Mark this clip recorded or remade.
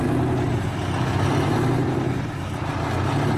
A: recorded